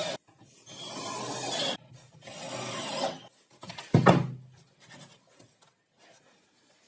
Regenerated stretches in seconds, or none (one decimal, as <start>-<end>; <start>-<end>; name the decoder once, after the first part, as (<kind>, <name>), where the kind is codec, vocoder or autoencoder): none